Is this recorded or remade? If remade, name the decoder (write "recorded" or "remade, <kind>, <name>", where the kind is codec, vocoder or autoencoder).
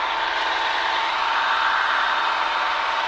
recorded